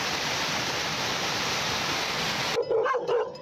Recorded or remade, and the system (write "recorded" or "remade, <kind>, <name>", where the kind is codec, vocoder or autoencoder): recorded